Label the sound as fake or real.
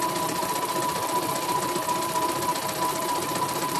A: fake